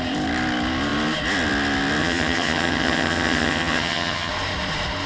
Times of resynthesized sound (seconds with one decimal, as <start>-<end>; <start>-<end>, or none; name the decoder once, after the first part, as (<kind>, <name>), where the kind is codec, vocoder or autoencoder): 2.0-4.3 (vocoder, HiFi-GAN)